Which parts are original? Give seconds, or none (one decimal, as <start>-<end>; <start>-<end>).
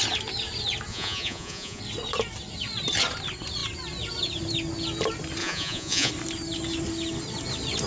0.0-0.9; 1.8-5.4; 6.1-7.9